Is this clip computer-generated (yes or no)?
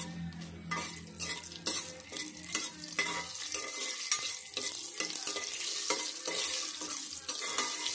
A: no